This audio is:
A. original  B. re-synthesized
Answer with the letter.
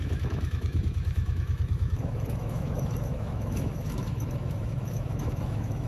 B